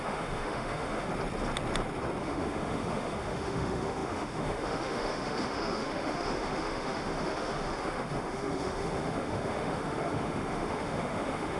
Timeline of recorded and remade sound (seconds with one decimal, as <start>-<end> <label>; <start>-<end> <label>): 0.0-1.1 remade; 1.1-2.2 recorded; 2.2-11.6 remade